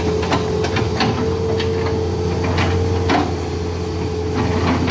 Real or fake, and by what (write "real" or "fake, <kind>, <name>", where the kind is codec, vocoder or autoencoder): real